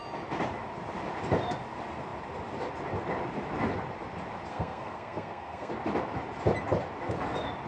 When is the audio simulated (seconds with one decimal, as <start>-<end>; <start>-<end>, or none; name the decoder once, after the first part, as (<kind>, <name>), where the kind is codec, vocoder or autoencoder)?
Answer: 4.5-5.7 (codec, SNAC)

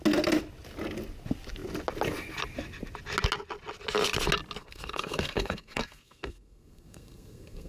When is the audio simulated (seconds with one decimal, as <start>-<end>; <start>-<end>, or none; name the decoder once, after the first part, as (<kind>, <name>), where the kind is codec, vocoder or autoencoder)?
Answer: 4.6-7.7 (codec, SNAC)

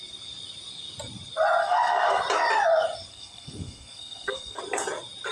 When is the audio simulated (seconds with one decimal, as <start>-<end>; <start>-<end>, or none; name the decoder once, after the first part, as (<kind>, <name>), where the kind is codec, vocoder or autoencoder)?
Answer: 1.6-2.2 (codec, SNAC); 3.1-4.6